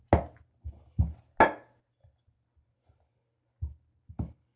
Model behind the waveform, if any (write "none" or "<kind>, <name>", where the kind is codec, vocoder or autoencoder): none